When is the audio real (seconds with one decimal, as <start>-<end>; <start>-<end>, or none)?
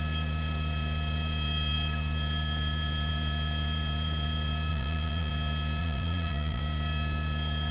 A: 0.0-4.7; 5.3-5.8; 6.6-7.7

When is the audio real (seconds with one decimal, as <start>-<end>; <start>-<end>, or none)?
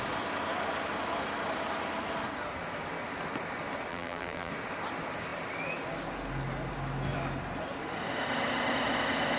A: 0.0-3.9; 4.5-9.4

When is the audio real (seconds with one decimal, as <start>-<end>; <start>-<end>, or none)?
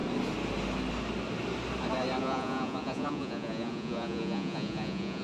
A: 0.0-2.2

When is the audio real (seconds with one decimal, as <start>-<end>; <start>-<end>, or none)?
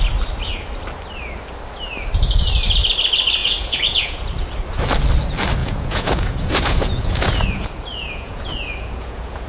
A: 0.0-3.4; 4.2-5.6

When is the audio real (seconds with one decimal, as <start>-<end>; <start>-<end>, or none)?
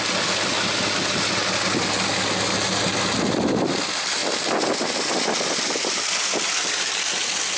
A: 0.0-7.6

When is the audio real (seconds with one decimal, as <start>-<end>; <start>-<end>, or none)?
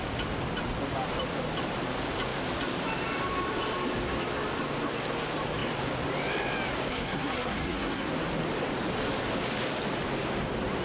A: 0.0-6.9; 8.1-10.8